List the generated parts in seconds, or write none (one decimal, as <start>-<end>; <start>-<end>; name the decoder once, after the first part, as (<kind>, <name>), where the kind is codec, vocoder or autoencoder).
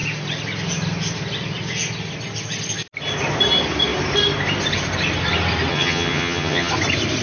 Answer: 5.7-6.7 (vocoder, HiFi-GAN)